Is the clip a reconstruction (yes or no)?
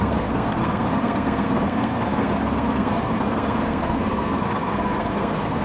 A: yes